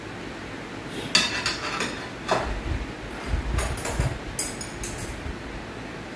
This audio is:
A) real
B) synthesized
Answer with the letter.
A